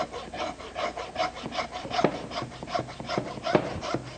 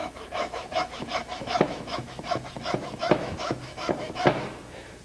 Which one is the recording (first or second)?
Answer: first